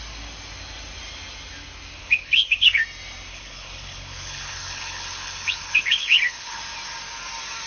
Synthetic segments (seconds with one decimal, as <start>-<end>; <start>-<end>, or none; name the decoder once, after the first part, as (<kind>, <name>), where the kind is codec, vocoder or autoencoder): 2.0-2.8 (codec, HILCodec); 3.3-6.6

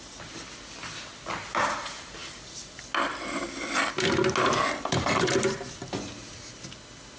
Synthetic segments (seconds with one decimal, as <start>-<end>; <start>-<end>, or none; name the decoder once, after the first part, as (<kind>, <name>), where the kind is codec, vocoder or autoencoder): none

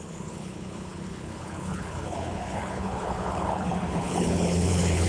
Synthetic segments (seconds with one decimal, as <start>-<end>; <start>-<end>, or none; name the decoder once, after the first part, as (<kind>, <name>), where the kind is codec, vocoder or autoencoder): 0.0-5.1 (codec, HILCodec)

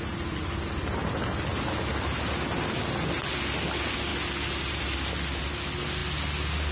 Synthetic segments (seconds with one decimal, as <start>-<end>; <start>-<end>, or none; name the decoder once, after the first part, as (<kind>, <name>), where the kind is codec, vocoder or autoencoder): none

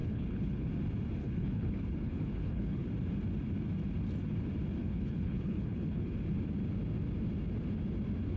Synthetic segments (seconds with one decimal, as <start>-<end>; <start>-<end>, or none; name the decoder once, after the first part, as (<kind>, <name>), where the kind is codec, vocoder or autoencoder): 0.0-0.7 (codec, HILCodec); 1.2-2.9; 4.8-6.1

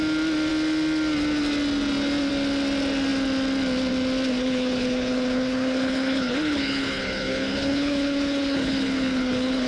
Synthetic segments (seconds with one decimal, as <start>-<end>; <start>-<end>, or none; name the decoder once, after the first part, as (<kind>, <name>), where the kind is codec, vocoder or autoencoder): 4.3-9.7 (codec, HILCodec)

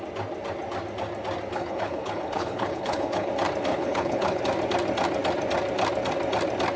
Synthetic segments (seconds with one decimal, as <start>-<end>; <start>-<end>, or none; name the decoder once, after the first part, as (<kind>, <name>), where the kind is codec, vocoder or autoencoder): 1.5-3.3 (codec, HILCodec); 3.7-4.4

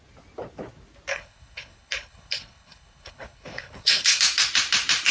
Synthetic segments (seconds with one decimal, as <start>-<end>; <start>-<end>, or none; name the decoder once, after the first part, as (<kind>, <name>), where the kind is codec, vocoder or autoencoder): 1.1-4.2 (codec, HILCodec)